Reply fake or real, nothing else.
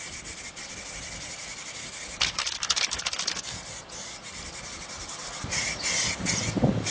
real